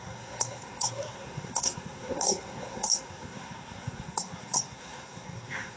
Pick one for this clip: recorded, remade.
remade